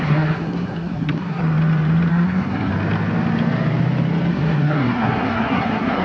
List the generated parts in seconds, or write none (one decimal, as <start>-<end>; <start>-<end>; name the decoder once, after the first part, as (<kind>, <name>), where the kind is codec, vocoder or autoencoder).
0.0-1.4 (codec, SNAC); 2.1-2.7; 4.3-6.0